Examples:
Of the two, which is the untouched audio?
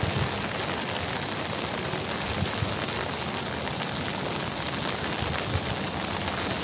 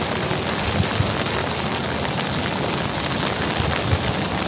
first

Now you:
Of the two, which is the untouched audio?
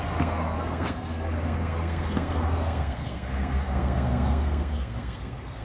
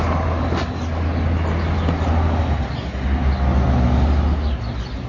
second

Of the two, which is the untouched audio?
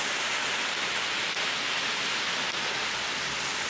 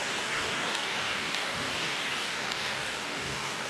first